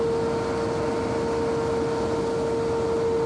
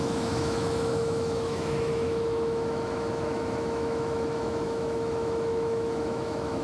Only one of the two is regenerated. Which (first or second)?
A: second